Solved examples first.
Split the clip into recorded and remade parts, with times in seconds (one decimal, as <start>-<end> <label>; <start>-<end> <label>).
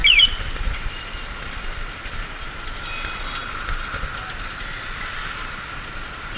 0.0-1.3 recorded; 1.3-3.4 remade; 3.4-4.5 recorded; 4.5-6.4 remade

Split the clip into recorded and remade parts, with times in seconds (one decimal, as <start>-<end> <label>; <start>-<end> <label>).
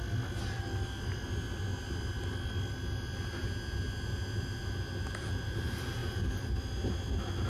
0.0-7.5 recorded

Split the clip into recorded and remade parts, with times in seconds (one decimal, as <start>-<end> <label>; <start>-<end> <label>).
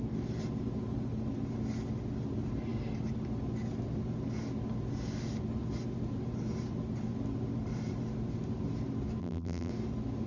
0.0-9.2 recorded; 9.2-9.7 remade; 9.7-10.3 recorded